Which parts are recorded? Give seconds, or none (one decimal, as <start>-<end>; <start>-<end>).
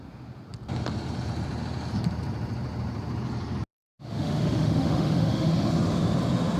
0.0-3.7; 5.5-6.6